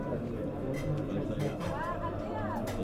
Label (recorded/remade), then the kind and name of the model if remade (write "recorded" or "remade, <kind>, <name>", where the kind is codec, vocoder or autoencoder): recorded